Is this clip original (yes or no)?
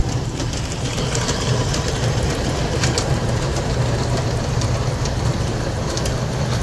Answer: no